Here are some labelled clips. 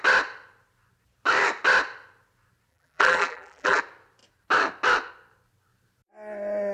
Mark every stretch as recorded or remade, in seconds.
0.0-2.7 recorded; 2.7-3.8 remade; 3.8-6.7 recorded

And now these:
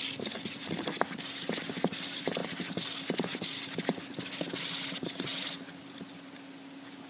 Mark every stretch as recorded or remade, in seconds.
0.0-5.3 recorded; 5.3-7.1 remade

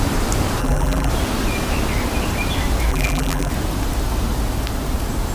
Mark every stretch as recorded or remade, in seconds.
0.0-0.6 recorded; 0.6-1.1 remade; 1.1-2.9 recorded; 2.9-3.5 remade; 3.5-5.3 recorded